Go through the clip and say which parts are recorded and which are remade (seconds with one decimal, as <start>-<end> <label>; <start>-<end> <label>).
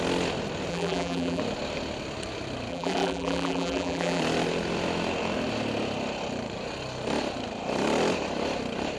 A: 0.0-0.7 recorded; 0.7-1.4 remade; 1.4-2.7 recorded; 2.7-4.2 remade; 4.2-9.0 recorded